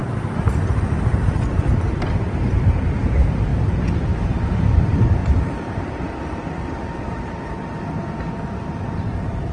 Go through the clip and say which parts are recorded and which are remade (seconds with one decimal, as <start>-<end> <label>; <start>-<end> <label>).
0.0-9.5 remade